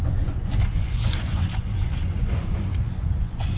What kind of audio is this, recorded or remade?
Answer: remade